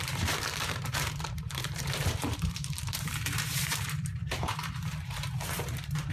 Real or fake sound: fake